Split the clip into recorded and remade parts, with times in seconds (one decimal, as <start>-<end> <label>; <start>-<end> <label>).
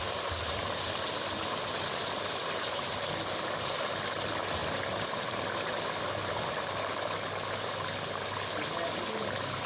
0.0-9.7 recorded